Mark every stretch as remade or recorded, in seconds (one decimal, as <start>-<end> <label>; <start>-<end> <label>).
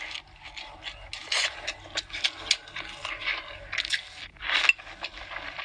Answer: 0.0-5.6 recorded